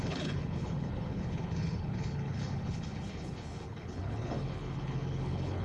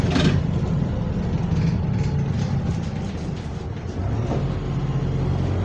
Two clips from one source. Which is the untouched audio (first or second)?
second